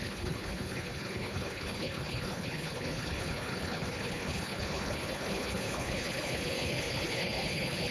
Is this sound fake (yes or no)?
yes